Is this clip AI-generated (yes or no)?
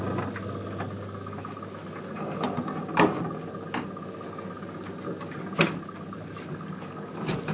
no